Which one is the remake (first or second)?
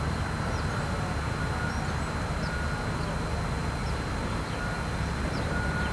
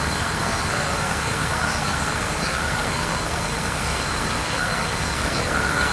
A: second